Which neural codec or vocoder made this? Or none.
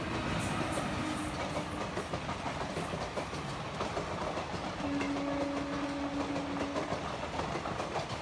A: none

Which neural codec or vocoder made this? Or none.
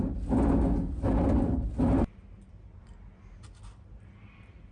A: none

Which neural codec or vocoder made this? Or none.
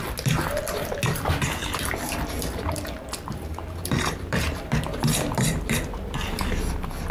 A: vocoder, BigVGAN v2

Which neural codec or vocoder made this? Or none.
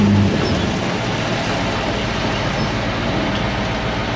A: none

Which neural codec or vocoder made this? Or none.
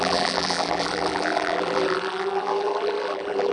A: vocoder, BigVGAN v2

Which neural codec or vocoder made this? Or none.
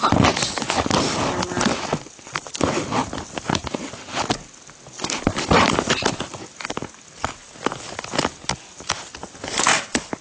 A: none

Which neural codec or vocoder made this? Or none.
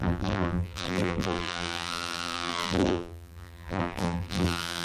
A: vocoder, BigVGAN v2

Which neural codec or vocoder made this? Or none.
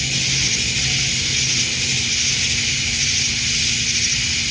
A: none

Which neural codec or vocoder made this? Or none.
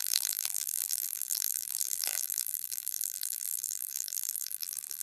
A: vocoder, BigVGAN v2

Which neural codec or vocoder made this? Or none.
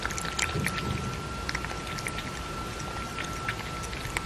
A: none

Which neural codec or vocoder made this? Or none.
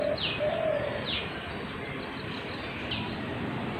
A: none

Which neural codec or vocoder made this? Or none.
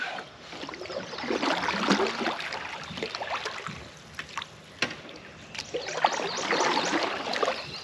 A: none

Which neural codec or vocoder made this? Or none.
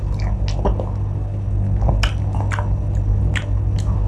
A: none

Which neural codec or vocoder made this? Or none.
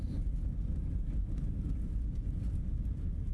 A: vocoder, BigVGAN v2